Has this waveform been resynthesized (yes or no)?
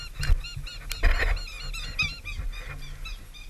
no